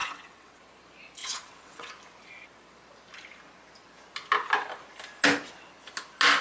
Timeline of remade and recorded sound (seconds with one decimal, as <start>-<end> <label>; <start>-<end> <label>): 0.0-0.6 remade; 0.6-1.2 recorded; 1.2-1.9 remade; 1.9-6.4 recorded